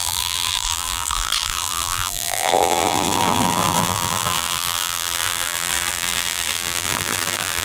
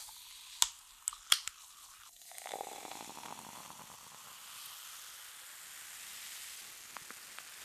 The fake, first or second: first